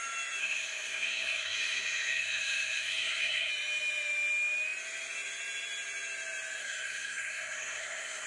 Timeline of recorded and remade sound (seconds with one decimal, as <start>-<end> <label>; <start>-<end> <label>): 0.0-0.4 recorded; 0.4-3.5 remade; 3.5-6.6 recorded; 6.6-8.3 remade